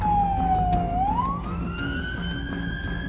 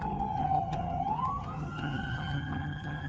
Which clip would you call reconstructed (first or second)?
second